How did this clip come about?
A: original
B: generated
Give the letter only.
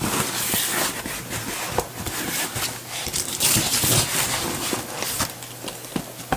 A